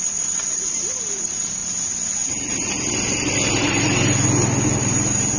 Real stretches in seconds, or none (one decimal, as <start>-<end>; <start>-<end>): 1.6-4.8